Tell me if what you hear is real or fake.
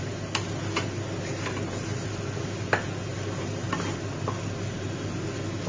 real